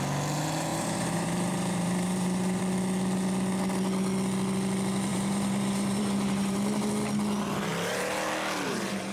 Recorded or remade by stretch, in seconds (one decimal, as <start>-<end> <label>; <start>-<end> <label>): 0.0-0.7 recorded; 0.7-2.6 remade; 2.6-5.1 recorded; 5.1-6.9 remade; 6.9-9.1 recorded

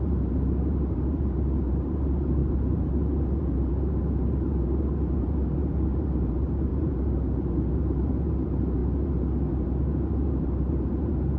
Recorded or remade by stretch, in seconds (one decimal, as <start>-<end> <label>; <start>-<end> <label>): 0.0-11.4 remade

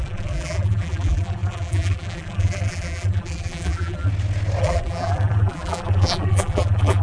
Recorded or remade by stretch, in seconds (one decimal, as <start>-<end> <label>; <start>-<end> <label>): 0.0-4.1 remade; 4.1-4.6 recorded; 4.6-7.0 remade

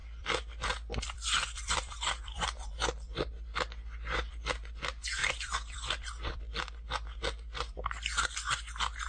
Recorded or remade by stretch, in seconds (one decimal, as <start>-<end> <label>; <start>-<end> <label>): 0.0-2.7 remade; 2.7-5.2 recorded; 5.2-6.4 remade; 6.4-9.1 recorded

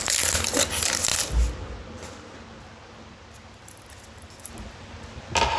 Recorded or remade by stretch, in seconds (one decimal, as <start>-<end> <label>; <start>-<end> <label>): 0.0-5.6 recorded